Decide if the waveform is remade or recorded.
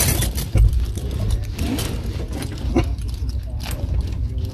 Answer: recorded